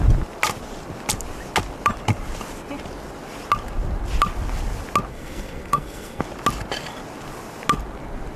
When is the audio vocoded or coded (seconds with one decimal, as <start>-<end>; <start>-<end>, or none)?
5.1-6.2